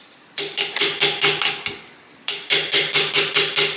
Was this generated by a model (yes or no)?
no